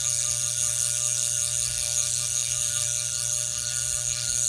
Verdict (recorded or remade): remade